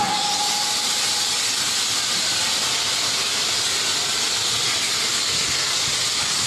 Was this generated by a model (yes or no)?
no